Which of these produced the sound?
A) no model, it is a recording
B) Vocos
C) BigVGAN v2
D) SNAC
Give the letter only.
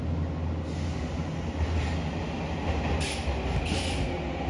A